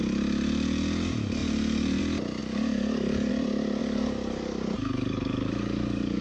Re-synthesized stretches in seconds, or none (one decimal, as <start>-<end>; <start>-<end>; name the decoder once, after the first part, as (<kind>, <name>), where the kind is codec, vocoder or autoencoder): 2.4-3.3 (codec, DAC); 3.8-6.2

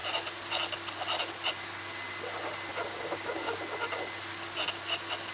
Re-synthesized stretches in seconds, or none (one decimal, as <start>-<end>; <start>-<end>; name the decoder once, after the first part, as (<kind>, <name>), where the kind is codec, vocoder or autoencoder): 2.9-3.6 (codec, DAC)

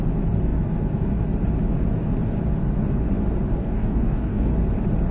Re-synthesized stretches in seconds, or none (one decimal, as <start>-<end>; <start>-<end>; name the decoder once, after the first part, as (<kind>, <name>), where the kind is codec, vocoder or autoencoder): 3.6-4.5 (codec, DAC)

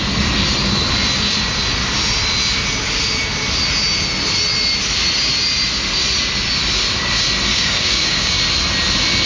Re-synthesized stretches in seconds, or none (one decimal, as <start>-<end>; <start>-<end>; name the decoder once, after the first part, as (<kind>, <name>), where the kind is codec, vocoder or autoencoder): 7.5-8.4 (codec, DAC)

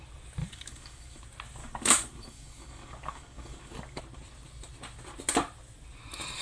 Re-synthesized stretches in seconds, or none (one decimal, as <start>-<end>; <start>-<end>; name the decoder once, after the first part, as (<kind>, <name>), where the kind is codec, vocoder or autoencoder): 0.4-1.2 (codec, DAC); 1.6-4.0

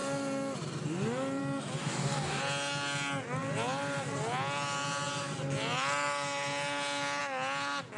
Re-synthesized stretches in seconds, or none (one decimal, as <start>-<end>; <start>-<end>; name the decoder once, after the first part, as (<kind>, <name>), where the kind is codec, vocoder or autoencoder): 1.8-2.4 (codec, DAC)